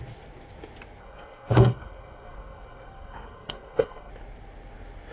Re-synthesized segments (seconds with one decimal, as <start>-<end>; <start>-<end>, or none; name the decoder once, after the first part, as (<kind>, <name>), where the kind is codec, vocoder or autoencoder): 1.0-4.1 (codec, SNAC)